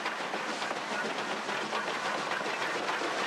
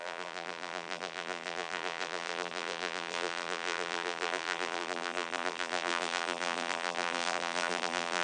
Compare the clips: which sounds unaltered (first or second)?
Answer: first